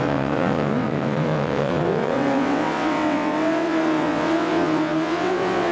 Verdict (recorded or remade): remade